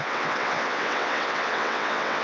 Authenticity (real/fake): fake